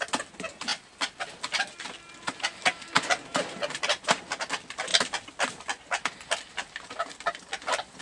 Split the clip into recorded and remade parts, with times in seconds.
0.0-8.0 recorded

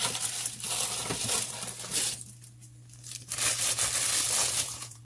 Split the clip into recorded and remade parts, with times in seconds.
0.0-4.4 recorded; 4.4-5.0 remade

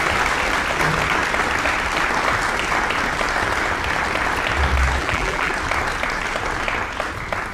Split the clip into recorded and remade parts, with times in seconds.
0.0-5.0 recorded; 5.0-5.5 remade; 5.5-7.5 recorded

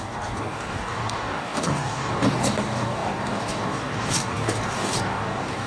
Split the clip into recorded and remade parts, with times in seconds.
0.0-5.7 remade